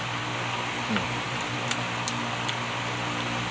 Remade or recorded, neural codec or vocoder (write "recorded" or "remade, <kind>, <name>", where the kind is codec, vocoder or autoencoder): recorded